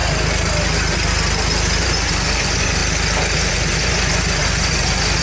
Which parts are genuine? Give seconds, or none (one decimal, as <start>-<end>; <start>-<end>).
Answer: 0.0-1.8; 2.8-3.5